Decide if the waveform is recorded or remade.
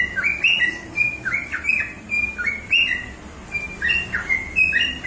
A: recorded